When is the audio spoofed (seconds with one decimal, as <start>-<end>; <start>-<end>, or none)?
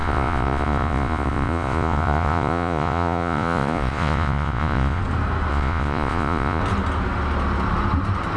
0.0-5.0; 5.5-6.6